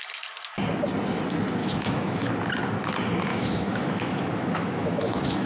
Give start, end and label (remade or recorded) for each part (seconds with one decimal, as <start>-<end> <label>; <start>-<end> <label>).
0.0-1.6 recorded; 1.6-2.3 remade; 2.3-3.3 recorded; 3.3-5.5 remade